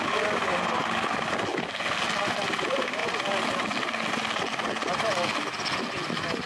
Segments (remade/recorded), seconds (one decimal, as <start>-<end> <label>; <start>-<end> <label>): 0.0-6.5 recorded